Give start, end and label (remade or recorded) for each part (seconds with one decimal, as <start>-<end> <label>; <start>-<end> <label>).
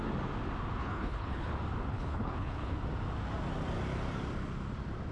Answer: 0.0-0.8 recorded; 0.8-1.5 remade; 1.5-1.9 recorded; 1.9-2.8 remade; 2.8-5.1 recorded